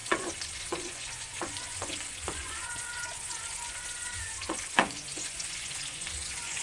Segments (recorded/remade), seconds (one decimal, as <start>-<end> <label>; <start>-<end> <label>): 0.0-6.6 remade